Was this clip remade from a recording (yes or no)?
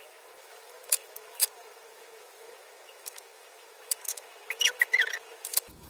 yes